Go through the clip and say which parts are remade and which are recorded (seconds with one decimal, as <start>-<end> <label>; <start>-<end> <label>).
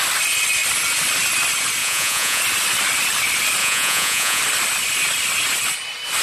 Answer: 0.0-1.8 recorded; 1.8-2.4 remade; 2.4-3.6 recorded; 3.6-4.4 remade; 4.4-6.2 recorded